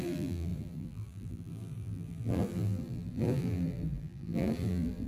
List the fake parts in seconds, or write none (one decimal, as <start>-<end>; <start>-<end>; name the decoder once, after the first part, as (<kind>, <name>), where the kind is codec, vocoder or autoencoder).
0.0-5.1 (vocoder, BigVGAN v2)